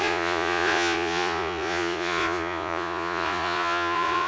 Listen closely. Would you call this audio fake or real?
fake